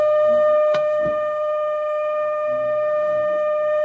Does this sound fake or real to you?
fake